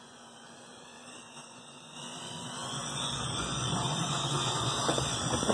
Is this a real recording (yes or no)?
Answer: no